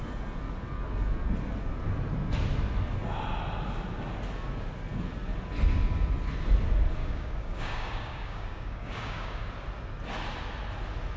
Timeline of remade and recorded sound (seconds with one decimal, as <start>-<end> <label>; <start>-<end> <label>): 0.0-7.0 recorded; 7.0-9.5 remade; 9.5-11.2 recorded